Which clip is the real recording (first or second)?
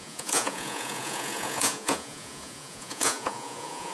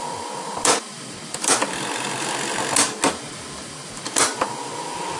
second